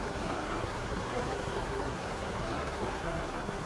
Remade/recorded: remade